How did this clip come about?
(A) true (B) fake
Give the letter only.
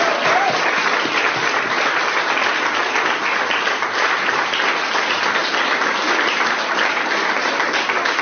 A